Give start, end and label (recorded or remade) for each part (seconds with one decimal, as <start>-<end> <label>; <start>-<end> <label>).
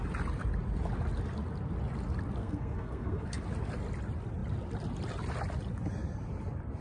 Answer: 0.0-2.4 recorded; 2.4-3.4 remade; 3.4-6.8 recorded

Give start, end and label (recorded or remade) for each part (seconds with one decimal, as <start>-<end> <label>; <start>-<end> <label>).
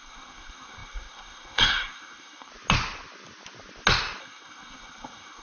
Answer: 0.0-2.5 remade; 2.5-4.2 recorded; 4.2-5.4 remade